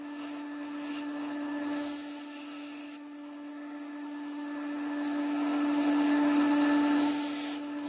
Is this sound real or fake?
fake